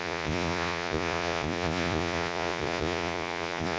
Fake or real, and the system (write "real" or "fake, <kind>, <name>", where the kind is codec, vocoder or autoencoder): fake, vocoder, Vocos